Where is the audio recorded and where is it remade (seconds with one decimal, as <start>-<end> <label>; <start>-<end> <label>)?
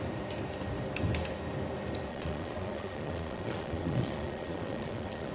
0.0-2.1 recorded; 2.1-5.3 remade